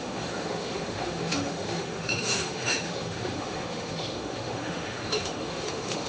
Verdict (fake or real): fake